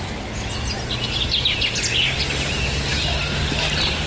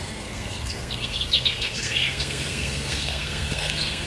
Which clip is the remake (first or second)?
second